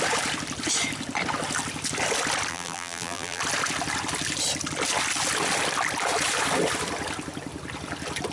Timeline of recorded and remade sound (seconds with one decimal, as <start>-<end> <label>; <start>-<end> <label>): 0.0-2.5 recorded; 2.5-3.4 remade; 3.4-8.3 recorded